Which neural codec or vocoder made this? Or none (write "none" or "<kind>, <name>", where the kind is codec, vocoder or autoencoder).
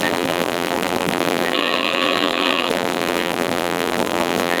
vocoder, BigVGAN v2